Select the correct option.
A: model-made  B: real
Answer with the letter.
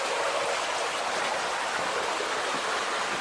B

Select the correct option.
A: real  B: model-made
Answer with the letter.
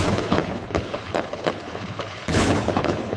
B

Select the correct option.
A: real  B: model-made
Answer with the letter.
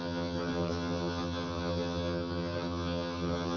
B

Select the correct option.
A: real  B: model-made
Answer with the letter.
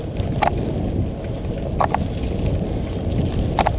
A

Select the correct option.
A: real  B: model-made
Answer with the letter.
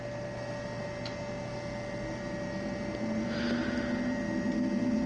A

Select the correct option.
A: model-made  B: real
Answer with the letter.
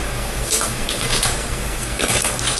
A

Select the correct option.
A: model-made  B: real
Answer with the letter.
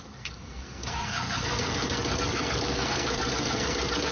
A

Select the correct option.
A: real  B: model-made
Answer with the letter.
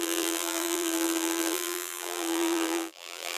B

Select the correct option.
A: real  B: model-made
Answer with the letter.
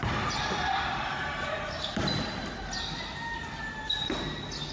A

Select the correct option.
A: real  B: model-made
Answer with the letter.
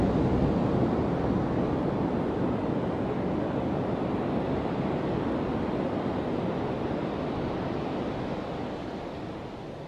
A